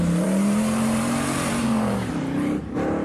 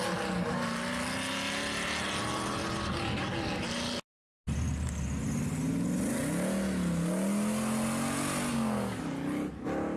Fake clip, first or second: first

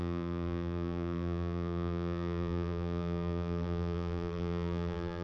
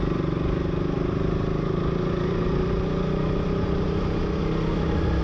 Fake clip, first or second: first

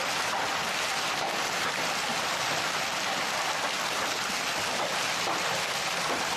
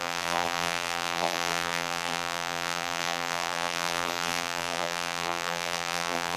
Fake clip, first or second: second